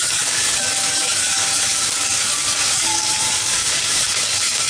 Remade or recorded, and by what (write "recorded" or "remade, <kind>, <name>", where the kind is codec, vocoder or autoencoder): remade, codec, DAC